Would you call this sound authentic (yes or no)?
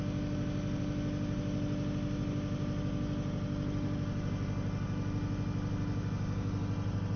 yes